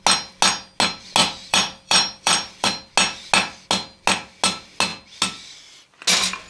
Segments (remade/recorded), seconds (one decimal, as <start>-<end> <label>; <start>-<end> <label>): 0.0-1.2 recorded; 1.2-2.9 remade; 2.9-6.5 recorded